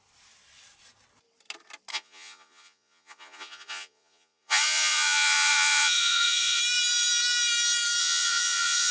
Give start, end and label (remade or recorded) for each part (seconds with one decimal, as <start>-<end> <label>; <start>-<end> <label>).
0.0-1.9 recorded; 1.9-6.6 remade; 6.6-8.0 recorded; 8.0-8.9 remade